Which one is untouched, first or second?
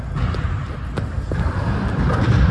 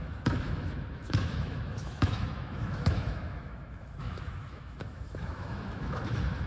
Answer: first